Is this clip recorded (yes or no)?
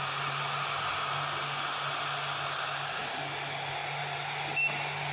yes